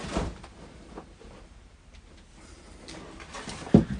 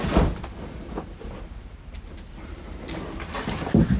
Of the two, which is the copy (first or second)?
second